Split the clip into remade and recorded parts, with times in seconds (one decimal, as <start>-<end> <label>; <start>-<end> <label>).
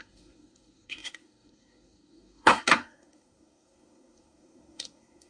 0.0-5.3 remade